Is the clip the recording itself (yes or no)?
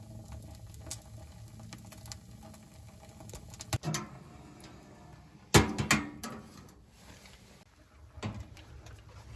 yes